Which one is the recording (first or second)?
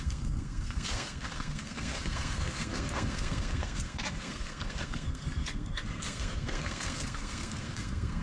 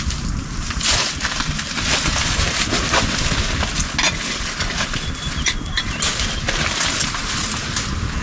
second